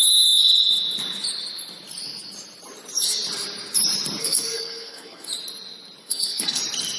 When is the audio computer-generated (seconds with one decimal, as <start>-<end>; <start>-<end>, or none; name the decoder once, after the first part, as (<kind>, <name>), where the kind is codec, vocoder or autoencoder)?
4.2-5.3 (codec, SNAC); 6.0-6.6